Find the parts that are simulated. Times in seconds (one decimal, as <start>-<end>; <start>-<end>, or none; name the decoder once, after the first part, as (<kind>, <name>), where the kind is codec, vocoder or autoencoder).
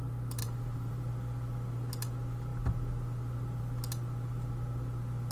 0.4-1.1 (vocoder, BigVGAN v2)